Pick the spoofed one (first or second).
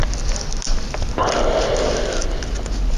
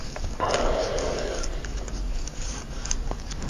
second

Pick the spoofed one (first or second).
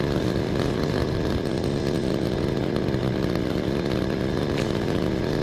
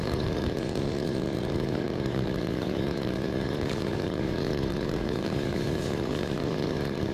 second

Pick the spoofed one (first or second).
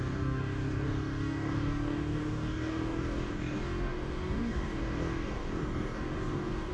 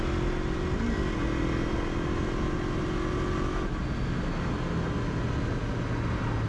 first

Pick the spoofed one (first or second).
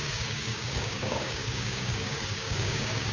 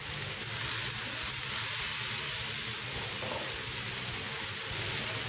first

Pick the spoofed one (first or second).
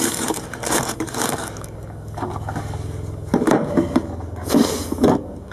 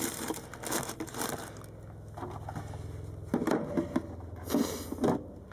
first